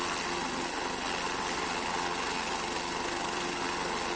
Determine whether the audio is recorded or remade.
recorded